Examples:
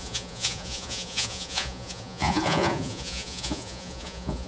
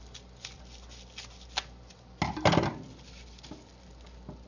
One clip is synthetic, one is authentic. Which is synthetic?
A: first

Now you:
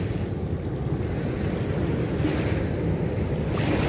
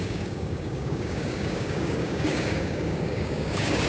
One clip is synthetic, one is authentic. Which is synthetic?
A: second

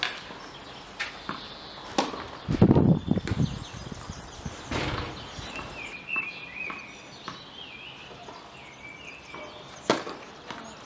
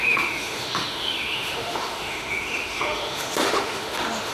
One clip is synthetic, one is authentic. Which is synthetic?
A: second